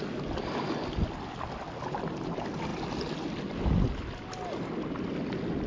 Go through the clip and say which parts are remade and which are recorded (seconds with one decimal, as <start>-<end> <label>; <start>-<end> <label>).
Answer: 0.0-5.7 recorded